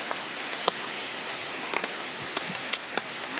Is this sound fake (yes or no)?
yes